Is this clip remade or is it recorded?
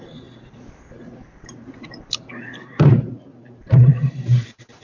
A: remade